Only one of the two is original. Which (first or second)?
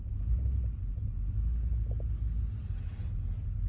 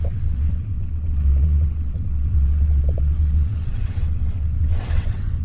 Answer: first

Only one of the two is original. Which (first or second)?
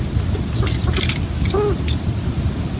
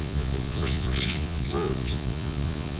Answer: first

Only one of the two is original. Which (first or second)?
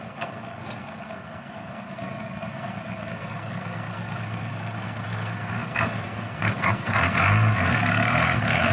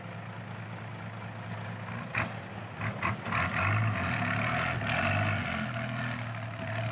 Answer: second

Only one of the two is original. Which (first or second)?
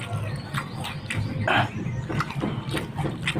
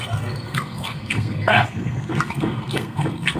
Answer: first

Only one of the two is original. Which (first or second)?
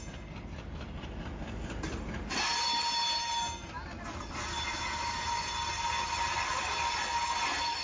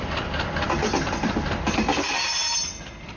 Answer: first